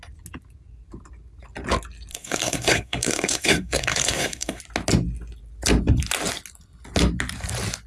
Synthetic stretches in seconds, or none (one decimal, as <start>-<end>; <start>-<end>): 2.1-4.6